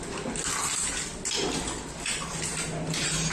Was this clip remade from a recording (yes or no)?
no